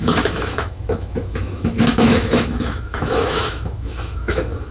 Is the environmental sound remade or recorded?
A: remade